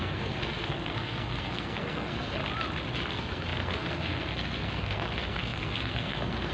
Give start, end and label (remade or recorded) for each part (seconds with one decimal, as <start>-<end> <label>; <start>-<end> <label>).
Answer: 0.0-2.4 remade; 2.4-3.1 recorded; 3.1-6.5 remade